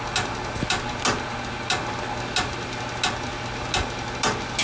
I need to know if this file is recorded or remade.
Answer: recorded